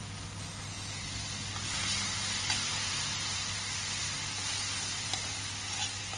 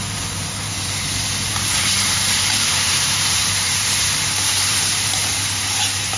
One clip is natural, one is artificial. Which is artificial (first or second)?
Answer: second